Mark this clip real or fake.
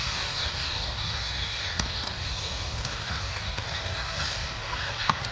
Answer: fake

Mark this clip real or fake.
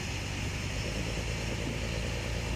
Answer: real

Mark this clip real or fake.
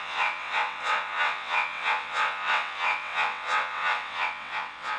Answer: fake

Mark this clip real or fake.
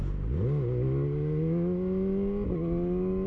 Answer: real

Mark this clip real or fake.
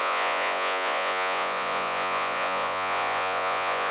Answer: fake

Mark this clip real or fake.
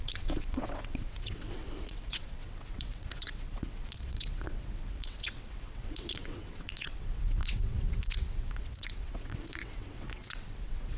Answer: fake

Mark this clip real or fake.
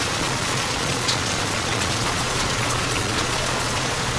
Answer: fake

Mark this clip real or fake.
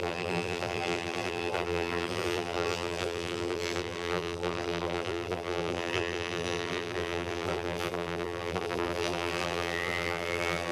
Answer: fake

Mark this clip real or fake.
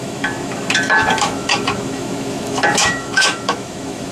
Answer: fake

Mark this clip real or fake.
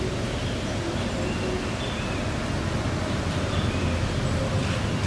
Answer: real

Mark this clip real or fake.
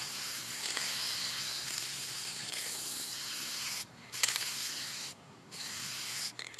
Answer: fake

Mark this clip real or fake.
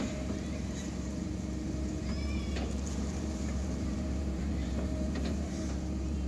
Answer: fake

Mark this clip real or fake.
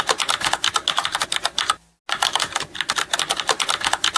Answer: real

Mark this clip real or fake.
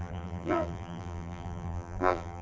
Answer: fake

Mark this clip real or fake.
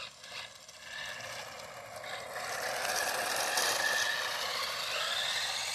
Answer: real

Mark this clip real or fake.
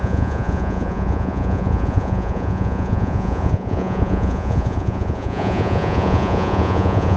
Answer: fake